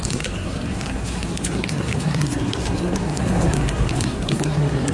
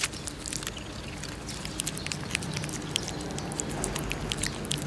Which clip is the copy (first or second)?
first